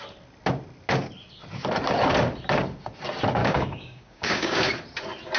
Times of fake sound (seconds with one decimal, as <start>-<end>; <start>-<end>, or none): 3.4-4.7